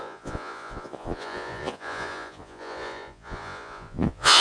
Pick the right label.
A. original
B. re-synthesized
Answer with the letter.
B